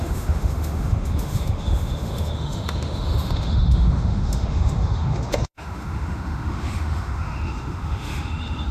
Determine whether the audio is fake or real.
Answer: fake